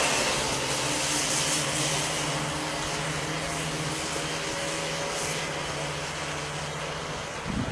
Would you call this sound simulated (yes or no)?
no